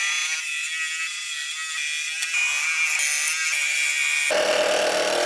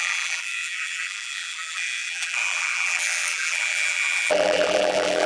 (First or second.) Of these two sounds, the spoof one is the second